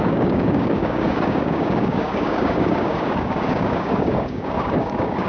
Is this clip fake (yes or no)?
yes